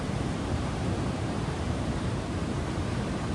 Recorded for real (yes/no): no